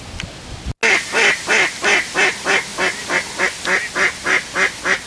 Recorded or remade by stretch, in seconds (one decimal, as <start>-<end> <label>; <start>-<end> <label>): 0.0-5.1 recorded